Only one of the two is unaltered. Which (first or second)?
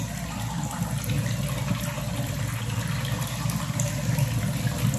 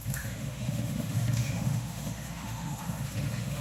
first